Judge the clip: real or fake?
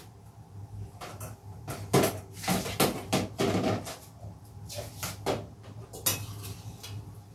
real